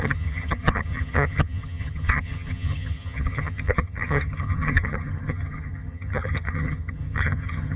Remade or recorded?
remade